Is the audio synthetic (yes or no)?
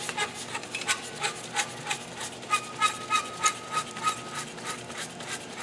no